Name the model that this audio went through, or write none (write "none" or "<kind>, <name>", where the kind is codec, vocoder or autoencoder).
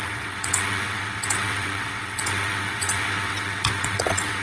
vocoder, WaveNeXt